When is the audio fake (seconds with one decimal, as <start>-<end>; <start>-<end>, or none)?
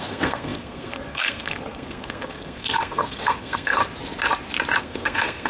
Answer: 0.0-3.8; 4.8-5.5